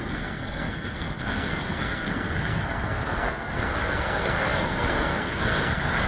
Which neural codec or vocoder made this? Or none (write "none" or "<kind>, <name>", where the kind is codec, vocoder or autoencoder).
codec, SNAC